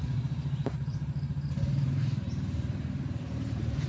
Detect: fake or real fake